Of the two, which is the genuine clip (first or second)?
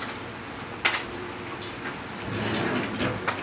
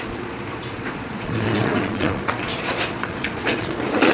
first